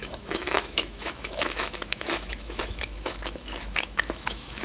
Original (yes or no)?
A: no